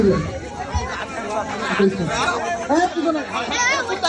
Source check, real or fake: real